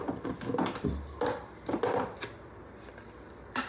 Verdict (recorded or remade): recorded